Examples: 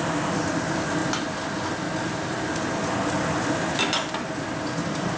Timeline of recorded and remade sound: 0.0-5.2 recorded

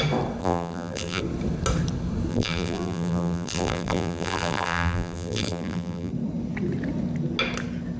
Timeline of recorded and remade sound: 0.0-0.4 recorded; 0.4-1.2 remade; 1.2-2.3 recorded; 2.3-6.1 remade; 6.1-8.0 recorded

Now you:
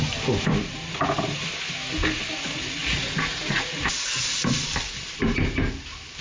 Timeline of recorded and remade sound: 0.0-2.8 recorded; 2.8-4.2 remade; 4.2-6.2 recorded